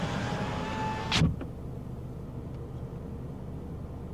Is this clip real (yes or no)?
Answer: yes